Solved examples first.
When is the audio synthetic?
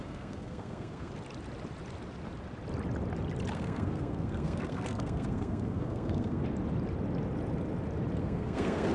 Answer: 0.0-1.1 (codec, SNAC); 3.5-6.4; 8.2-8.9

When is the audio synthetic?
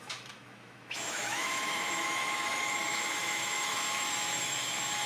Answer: 0.0-5.1 (autoencoder, DAC-VAE)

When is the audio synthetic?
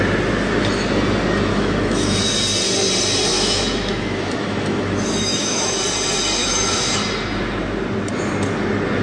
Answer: 1.5-2.2 (autoencoder, DAC-VAE); 3.3-5.8; 6.4-6.9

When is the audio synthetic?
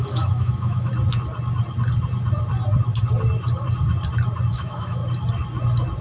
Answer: 0.0-0.9 (autoencoder, DAC-VAE); 4.5-5.0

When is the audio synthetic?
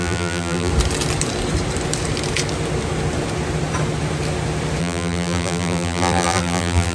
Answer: 0.0-0.7 (vocoder, BigVGAN v2); 4.8-6.9